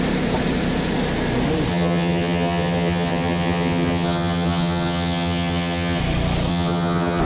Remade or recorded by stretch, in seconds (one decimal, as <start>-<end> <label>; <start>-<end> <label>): 0.0-1.7 recorded; 1.7-6.0 remade; 6.0-6.5 recorded; 6.5-7.2 remade